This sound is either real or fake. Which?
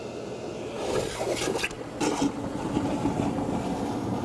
real